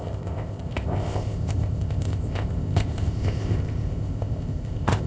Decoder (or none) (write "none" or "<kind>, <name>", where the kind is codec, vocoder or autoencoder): codec, ZipCodec